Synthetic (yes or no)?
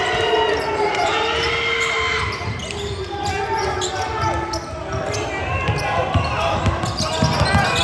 no